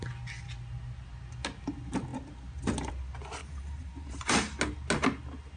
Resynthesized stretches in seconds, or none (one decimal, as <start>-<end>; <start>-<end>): 3.4-4.6